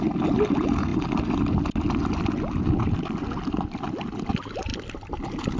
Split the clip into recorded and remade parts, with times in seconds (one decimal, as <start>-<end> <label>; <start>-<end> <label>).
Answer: 0.0-5.6 recorded